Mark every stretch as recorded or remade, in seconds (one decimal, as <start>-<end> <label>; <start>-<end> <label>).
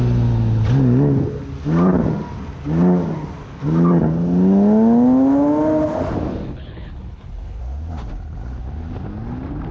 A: 0.0-6.4 recorded; 6.4-7.6 remade; 7.6-9.7 recorded